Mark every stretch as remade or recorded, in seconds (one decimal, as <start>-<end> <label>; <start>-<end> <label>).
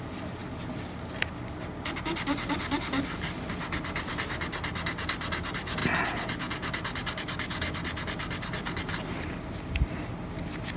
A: 0.0-10.8 recorded